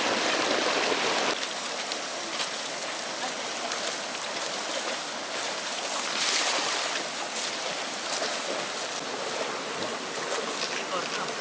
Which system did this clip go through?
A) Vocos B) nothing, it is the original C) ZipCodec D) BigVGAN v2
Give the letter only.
B